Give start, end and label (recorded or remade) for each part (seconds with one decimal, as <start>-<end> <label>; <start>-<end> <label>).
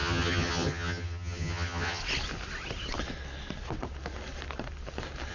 0.0-2.0 remade; 2.0-5.3 recorded